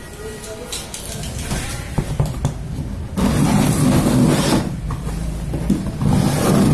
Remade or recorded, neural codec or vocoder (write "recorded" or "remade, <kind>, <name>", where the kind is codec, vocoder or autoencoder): recorded